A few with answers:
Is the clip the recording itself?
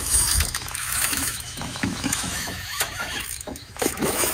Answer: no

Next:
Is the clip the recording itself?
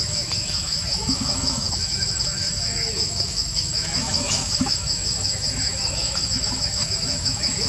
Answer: no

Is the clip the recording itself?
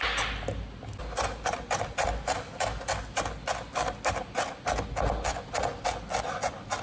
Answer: yes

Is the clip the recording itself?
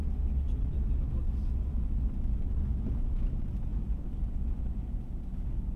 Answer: yes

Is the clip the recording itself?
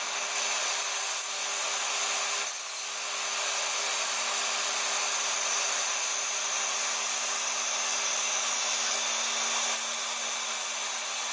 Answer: yes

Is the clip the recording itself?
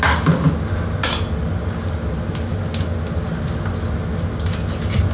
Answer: yes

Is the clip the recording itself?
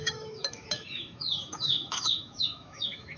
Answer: no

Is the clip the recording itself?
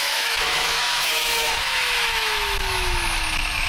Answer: no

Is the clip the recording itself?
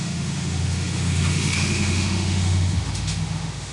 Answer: no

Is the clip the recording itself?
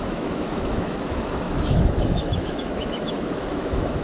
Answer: no